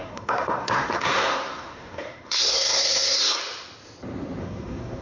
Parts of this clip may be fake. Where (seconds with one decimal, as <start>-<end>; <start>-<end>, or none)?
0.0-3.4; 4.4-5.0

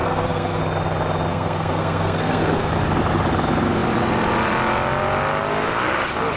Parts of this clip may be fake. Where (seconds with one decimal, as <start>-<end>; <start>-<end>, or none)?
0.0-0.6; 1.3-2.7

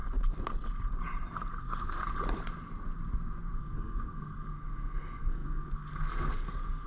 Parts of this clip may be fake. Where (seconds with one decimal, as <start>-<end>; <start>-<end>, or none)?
1.6-2.0; 3.6-6.9

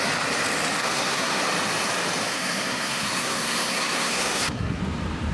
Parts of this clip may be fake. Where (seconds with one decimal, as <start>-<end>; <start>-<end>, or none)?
0.8-1.4; 2.3-4.8

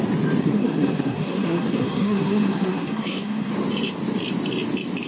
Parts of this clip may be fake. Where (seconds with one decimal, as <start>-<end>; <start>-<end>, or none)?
0.4-3.5

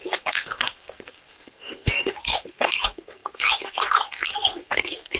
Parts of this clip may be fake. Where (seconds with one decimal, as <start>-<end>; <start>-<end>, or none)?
0.0-5.2

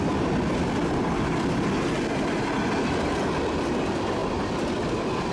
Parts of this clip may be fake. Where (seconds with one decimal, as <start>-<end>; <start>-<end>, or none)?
none